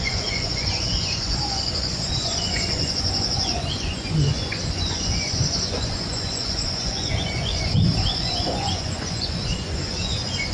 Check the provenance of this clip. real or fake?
fake